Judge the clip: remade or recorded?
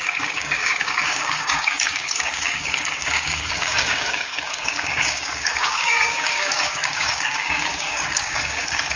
remade